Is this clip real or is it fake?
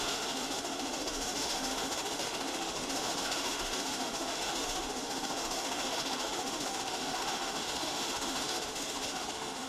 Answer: fake